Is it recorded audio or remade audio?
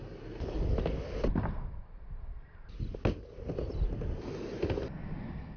recorded